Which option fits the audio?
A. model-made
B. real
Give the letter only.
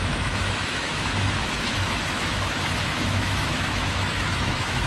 A